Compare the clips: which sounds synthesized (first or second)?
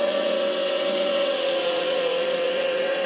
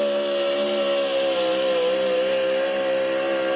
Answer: first